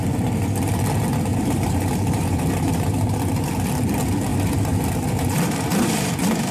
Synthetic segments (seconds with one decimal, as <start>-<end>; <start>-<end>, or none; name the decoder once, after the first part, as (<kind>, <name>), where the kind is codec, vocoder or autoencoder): 1.3-3.5 (vocoder, BigVGAN v2); 4.3-6.5